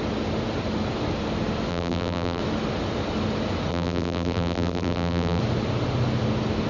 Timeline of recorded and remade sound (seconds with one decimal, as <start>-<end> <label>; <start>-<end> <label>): 0.0-1.7 recorded; 1.7-2.4 remade; 2.4-3.7 recorded; 3.7-5.4 remade; 5.4-6.7 recorded